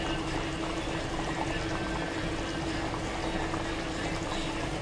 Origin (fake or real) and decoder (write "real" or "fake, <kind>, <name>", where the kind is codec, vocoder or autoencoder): real